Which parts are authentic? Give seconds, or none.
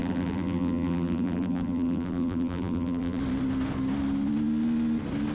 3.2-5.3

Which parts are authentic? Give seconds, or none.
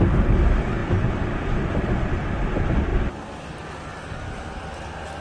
0.0-0.8; 2.5-2.9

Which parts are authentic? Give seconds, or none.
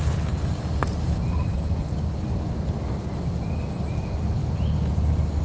0.0-5.4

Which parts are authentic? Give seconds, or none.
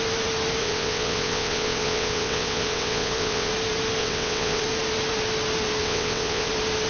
0.0-0.6; 3.5-4.0; 4.6-5.8; 6.5-6.9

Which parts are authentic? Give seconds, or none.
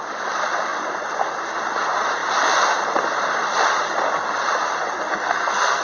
0.0-5.1